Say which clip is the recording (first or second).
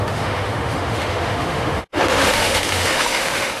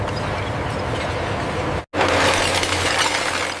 second